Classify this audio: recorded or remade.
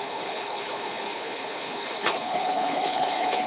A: remade